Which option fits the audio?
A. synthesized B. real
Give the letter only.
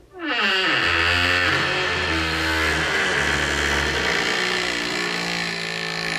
B